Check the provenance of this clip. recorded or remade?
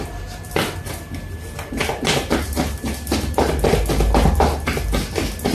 recorded